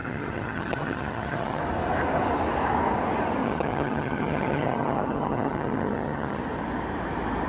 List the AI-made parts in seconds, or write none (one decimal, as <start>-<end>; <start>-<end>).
0.0-1.6; 3.4-6.4